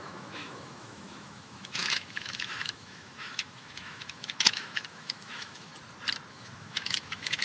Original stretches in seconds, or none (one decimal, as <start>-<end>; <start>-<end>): 5.7-6.3